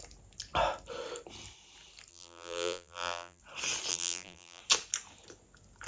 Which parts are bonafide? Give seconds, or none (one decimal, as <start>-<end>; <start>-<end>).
0.0-2.1; 3.4-3.9; 4.6-5.9